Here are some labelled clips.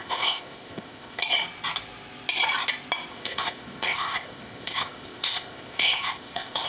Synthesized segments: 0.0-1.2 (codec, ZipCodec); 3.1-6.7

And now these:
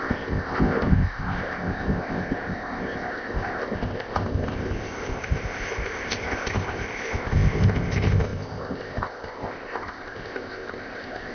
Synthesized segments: 0.0-11.3 (codec, ZipCodec)

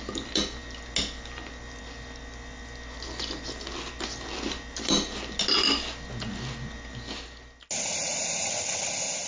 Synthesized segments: none